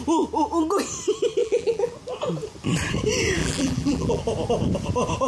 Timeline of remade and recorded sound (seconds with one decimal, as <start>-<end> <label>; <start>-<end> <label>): 0.0-1.4 recorded; 1.4-1.9 remade; 1.9-3.4 recorded; 3.4-4.2 remade; 4.2-5.3 recorded